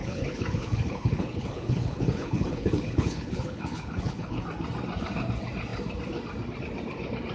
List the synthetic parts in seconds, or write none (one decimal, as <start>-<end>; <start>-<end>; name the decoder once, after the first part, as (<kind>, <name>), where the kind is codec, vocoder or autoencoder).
0.0-4.4 (codec, HILCodec)